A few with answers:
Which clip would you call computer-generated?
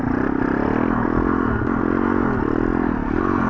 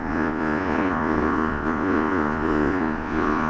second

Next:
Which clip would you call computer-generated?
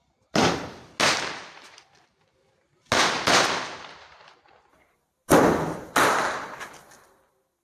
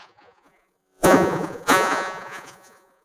second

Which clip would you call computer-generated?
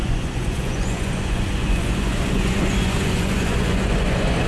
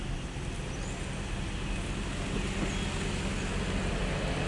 first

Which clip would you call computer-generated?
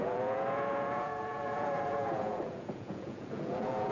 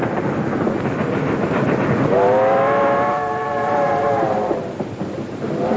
first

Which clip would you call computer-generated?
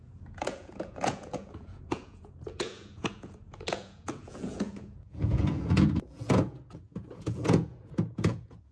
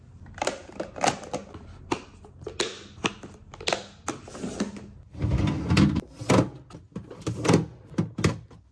first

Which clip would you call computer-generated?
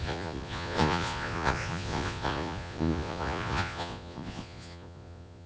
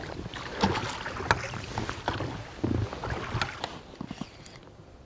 first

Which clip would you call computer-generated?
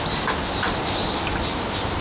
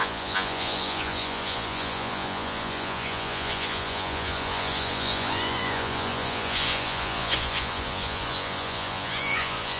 second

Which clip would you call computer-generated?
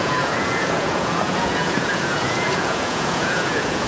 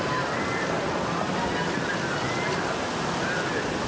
first